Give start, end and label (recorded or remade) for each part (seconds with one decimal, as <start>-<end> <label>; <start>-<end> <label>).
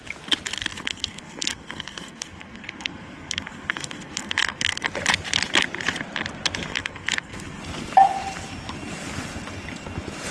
0.0-0.7 recorded; 0.7-4.9 remade; 4.9-6.7 recorded; 6.7-7.6 remade; 7.6-10.3 recorded